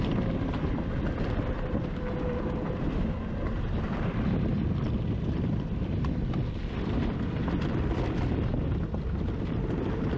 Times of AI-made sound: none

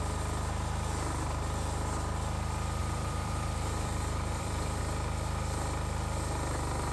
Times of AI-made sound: 2.8-4.8 (vocoder, BigVGAN v2)

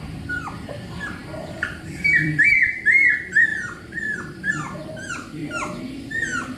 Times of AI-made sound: 0.0-5.4 (vocoder, BigVGAN v2)

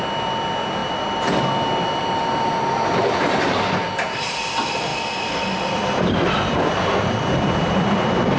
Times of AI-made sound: 0.0-8.4 (vocoder, BigVGAN v2)

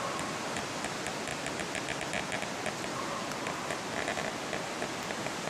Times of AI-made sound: none

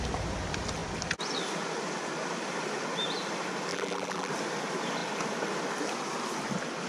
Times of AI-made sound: 3.7-4.3 (vocoder, BigVGAN v2)

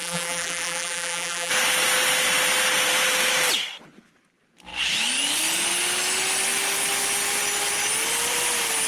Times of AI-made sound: 0.0-1.5 (vocoder, BigVGAN v2)

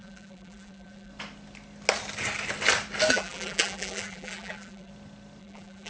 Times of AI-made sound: 0.0-1.1 (vocoder, BigVGAN v2); 3.1-4.9; 5.4-5.9